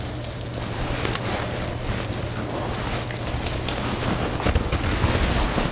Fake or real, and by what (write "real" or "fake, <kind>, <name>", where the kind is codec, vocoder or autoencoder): real